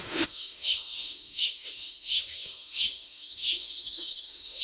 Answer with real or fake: fake